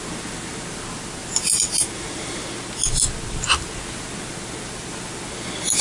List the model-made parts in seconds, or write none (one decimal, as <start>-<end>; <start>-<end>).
none